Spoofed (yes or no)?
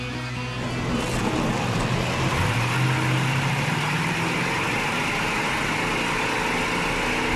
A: no